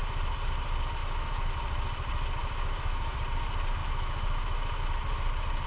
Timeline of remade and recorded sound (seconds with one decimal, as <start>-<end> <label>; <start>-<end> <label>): 0.0-1.0 recorded; 1.0-1.5 remade; 1.5-2.4 recorded; 2.4-3.2 remade; 3.2-3.8 recorded; 3.8-4.8 remade; 4.8-5.7 recorded

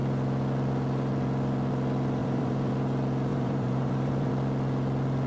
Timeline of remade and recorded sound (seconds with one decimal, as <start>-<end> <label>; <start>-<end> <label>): 0.0-2.2 recorded; 2.2-2.7 remade; 2.7-3.3 recorded; 3.3-4.3 remade; 4.3-5.3 recorded